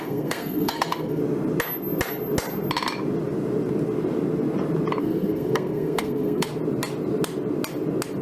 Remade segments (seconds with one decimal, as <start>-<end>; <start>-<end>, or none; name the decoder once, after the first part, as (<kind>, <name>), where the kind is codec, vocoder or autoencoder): 0.0-1.2 (codec, SNAC); 5.0-6.5